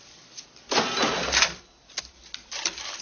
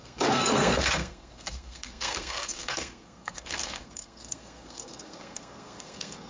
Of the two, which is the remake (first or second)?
second